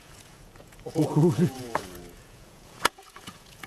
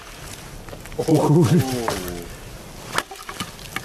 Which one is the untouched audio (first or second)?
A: second